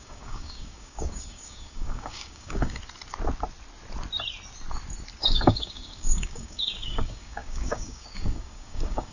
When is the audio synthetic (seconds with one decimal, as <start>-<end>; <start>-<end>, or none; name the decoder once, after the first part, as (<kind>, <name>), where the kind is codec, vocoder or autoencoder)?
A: 0.0-2.8 (codec, DAC); 5.2-9.1